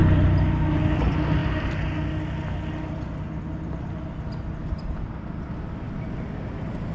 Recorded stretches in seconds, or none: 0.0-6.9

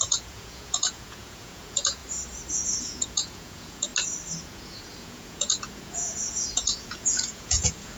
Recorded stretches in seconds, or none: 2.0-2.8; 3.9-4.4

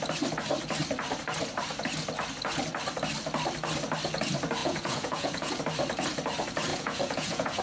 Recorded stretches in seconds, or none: 0.0-4.6; 5.5-6.7

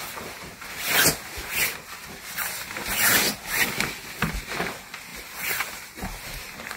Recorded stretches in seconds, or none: 0.0-5.1

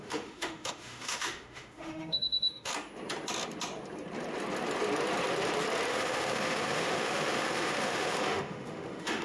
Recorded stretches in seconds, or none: 2.7-5.9

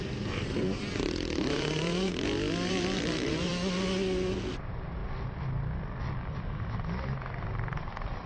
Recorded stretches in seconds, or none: 2.1-2.7; 3.5-4.5; 5.0-7.8

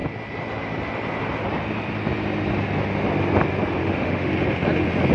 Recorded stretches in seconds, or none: 0.0-3.8; 4.3-5.1